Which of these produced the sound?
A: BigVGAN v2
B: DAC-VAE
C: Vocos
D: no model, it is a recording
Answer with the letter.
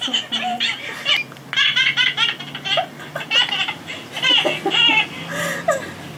D